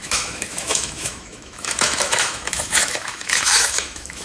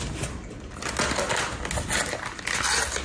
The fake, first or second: first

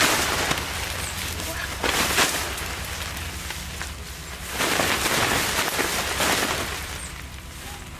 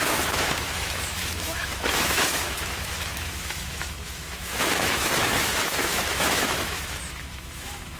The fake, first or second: second